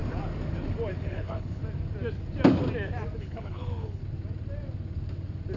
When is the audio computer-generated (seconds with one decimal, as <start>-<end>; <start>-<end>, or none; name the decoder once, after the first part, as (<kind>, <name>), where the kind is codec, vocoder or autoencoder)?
1.0-1.6 (codec, HILCodec); 3.2-4.0